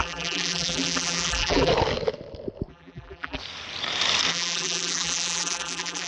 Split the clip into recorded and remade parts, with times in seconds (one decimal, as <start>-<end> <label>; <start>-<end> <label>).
0.0-1.7 remade; 1.7-2.7 recorded; 2.7-3.4 remade; 3.4-4.3 recorded; 4.3-6.1 remade